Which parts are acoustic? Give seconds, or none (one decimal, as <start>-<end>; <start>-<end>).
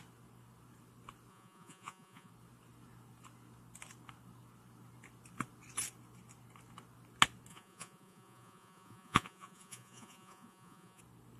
0.0-1.3; 2.3-7.5; 11.0-11.4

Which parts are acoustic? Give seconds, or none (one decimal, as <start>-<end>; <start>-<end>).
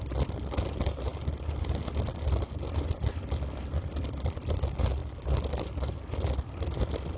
0.0-7.2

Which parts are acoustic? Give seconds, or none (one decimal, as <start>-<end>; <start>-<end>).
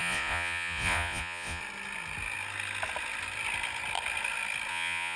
1.6-4.7